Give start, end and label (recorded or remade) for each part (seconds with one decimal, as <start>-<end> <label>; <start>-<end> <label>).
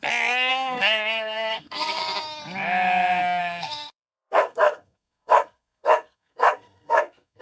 0.0-0.5 recorded; 0.5-2.0 remade; 2.0-3.4 recorded; 3.4-7.4 remade